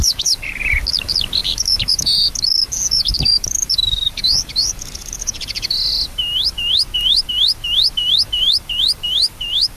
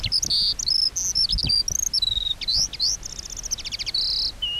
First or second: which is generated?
first